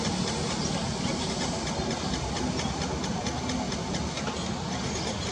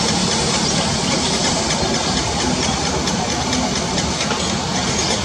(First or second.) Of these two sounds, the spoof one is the second